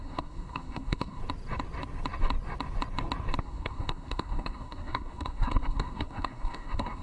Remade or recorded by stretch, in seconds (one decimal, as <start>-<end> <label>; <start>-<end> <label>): 0.0-1.2 remade; 1.2-3.4 recorded; 3.4-7.0 remade